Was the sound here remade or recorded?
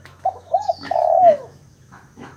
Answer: remade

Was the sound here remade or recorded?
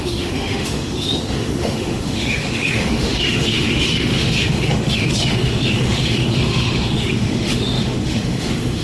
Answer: remade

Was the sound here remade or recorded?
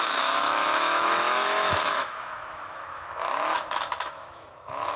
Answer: remade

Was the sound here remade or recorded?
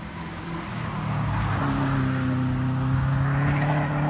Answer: recorded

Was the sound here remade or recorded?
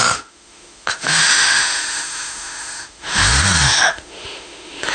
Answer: remade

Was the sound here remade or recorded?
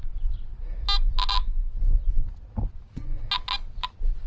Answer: recorded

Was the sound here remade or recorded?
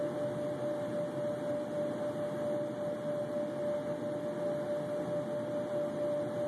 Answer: recorded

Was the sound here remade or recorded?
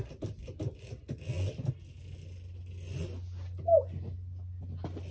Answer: recorded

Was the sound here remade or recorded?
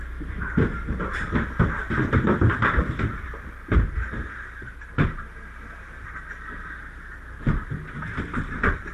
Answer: recorded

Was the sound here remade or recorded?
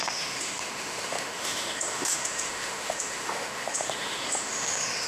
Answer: remade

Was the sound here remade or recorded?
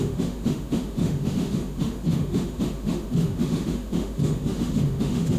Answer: remade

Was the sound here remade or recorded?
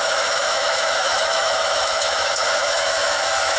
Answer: remade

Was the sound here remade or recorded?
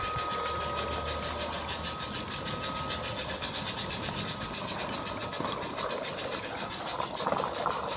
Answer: recorded